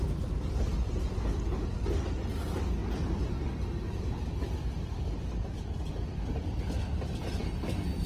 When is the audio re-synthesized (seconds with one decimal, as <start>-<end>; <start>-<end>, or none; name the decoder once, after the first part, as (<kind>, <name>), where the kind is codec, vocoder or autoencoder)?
none